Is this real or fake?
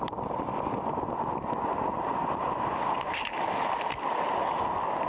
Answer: real